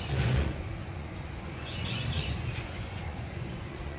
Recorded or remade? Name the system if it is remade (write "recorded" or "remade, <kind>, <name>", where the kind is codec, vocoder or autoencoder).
remade, vocoder, Vocos